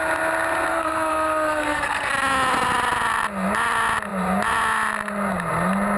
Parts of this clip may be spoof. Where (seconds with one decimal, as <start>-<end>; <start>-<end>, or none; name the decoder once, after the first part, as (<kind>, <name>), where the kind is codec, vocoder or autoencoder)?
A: 0.7-2.1 (codec, SNAC)